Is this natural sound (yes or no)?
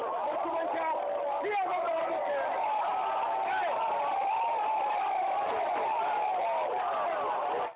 yes